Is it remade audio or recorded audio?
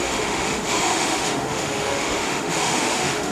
remade